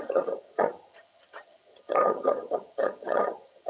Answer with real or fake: fake